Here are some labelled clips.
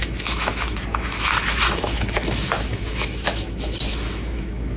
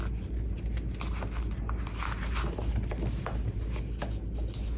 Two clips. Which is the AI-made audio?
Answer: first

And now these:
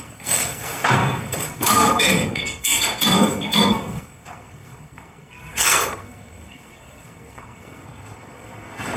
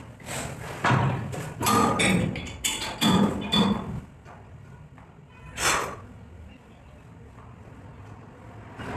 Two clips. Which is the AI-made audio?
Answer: first